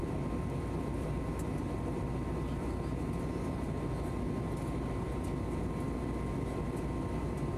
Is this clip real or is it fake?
real